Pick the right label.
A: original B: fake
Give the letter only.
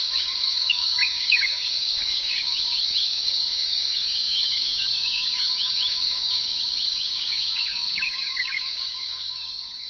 B